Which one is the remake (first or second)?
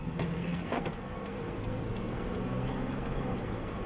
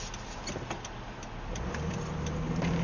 first